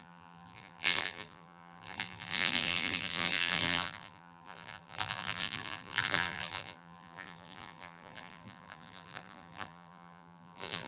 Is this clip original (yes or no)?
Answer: no